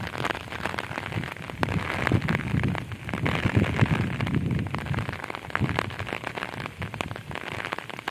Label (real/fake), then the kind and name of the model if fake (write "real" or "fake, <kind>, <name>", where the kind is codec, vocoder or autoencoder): real